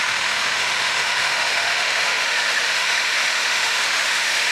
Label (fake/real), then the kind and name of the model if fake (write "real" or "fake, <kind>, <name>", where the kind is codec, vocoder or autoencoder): fake, autoencoder, DAC-VAE